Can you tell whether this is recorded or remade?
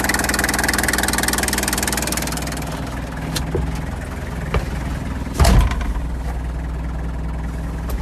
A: recorded